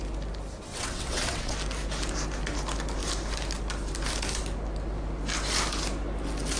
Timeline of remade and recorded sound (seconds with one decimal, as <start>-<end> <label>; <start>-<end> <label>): 0.0-0.7 recorded; 0.7-1.5 remade; 1.5-6.6 recorded